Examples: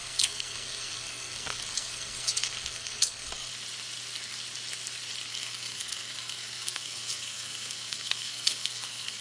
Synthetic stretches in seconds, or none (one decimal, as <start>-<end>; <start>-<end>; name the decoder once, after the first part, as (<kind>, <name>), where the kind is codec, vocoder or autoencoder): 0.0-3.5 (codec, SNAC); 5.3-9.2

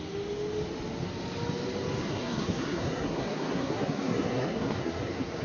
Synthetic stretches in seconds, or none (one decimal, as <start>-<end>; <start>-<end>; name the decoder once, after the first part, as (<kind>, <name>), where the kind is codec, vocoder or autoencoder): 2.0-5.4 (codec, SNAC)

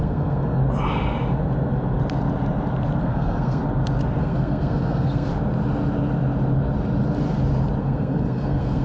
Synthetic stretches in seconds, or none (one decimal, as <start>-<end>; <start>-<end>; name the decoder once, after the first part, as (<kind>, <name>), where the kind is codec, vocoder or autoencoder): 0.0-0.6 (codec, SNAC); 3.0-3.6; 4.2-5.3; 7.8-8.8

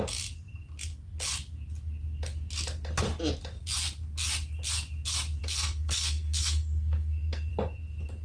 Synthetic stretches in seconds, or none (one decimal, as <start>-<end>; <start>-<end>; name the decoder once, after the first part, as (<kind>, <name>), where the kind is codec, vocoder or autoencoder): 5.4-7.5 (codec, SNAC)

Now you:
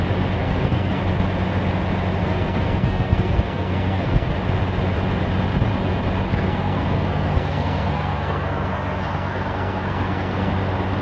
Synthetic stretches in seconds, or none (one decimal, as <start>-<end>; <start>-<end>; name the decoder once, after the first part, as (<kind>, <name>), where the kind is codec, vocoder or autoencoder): 0.4-1.0 (codec, SNAC); 2.2-4.3; 6.3-10.5